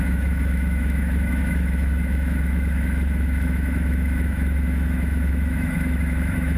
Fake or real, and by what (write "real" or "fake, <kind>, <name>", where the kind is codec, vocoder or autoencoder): fake, autoencoder, DAC-VAE